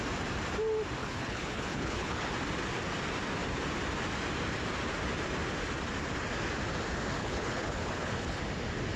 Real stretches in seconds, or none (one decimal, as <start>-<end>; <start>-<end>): 0.0-1.0; 2.3-7.2; 8.4-9.0